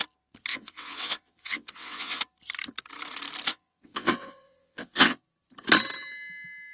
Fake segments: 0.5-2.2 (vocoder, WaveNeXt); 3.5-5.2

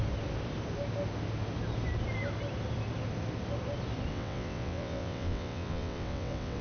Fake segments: 4.1-6.6 (vocoder, WaveNeXt)